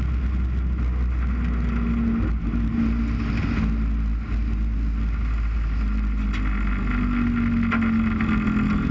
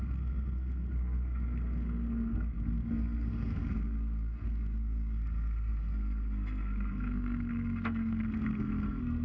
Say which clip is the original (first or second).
first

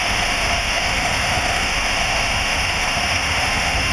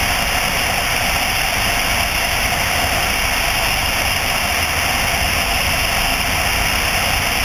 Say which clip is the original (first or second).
second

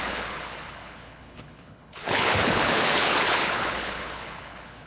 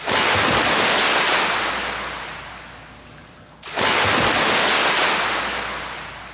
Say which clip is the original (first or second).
second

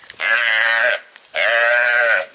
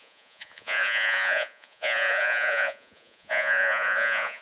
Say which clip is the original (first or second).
first